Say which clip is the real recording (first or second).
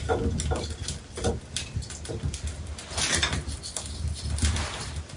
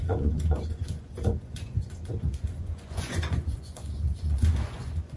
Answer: first